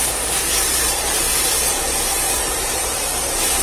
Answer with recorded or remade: remade